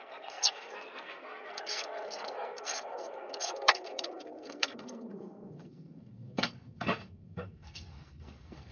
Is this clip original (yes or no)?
no